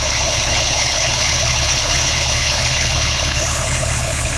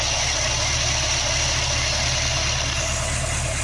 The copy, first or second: first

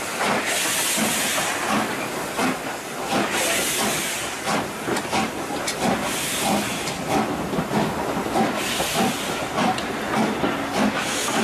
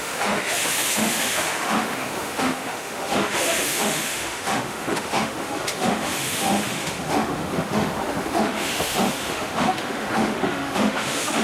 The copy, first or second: second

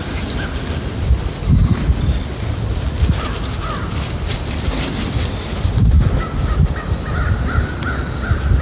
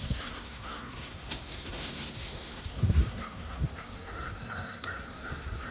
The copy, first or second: second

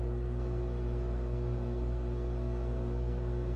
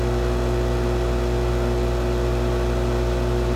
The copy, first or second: first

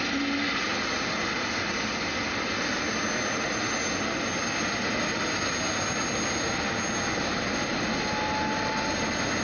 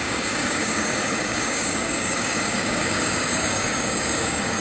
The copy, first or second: second